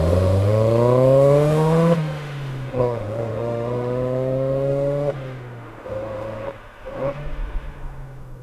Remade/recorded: remade